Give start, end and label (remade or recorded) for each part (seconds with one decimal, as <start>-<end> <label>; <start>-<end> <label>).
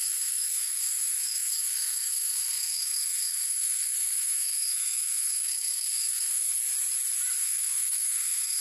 0.0-6.6 remade; 6.6-7.4 recorded; 7.4-8.6 remade